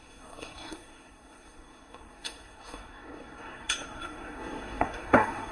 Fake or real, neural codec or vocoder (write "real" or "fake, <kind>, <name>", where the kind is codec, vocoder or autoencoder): fake, codec, SNAC